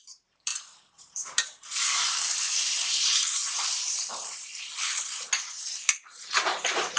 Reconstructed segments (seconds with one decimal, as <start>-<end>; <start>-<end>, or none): 0.0-0.5; 1.0-7.0